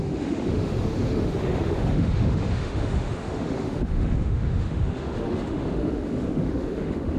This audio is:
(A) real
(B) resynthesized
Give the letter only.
B